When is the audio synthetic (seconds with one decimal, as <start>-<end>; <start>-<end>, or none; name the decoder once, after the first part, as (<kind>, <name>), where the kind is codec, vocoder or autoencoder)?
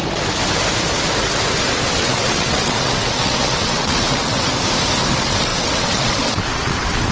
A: 1.9-4.5 (vocoder, WaveNeXt); 5.1-7.1